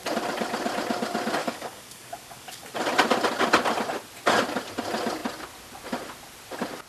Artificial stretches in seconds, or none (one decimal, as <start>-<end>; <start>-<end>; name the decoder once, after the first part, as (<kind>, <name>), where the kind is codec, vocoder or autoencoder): 1.4-2.7 (codec, DAC)

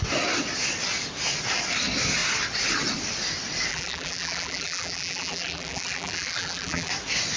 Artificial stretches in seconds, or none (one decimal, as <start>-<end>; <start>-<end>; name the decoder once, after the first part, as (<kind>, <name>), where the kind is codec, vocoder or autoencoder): 3.7-6.9 (vocoder, BigVGAN v2)

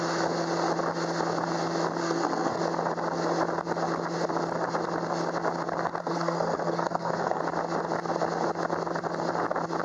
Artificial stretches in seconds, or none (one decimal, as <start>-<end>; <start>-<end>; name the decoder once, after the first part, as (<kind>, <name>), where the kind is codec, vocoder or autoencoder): 2.0-2.6 (codec, SNAC); 6.0-7.4